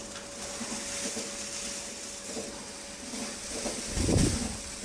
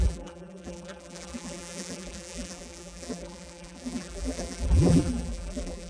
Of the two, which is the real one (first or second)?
first